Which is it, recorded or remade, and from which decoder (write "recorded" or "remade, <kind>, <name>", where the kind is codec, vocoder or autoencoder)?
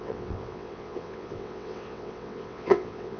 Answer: remade, vocoder, WaveNeXt